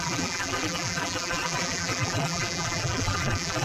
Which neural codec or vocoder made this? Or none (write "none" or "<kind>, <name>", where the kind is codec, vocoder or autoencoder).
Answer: vocoder, BigVGAN v2